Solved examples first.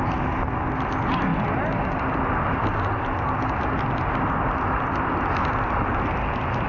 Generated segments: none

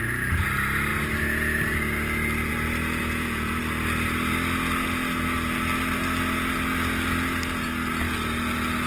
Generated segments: 3.0-3.6 (vocoder, Vocos)

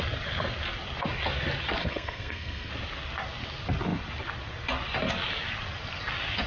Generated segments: 1.8-2.7 (codec, SNAC)

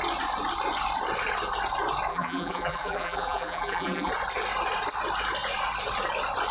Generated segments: 2.1-4.1 (vocoder, BigVGAN v2)

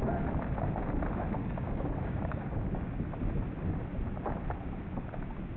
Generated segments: 1.4-3.0 (codec, DAC)

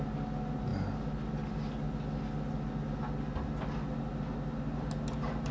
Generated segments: none

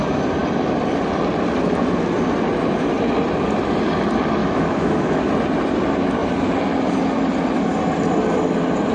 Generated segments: 4.4-5.2 (autoencoder, DAC-VAE)

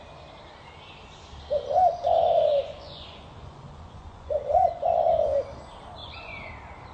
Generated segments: 1.9-4.9 (vocoder, Vocos); 6.0-6.5